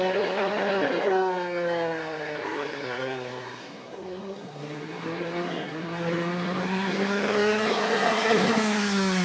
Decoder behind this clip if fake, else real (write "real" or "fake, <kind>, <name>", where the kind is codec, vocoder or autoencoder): fake, codec, SNAC